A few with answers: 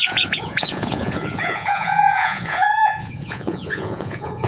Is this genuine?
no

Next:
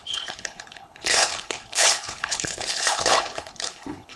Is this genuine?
no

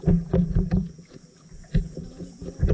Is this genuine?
no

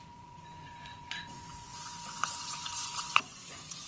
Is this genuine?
no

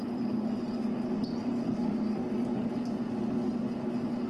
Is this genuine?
yes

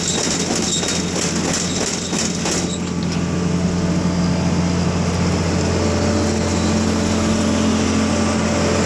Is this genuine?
yes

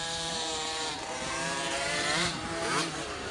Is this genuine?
no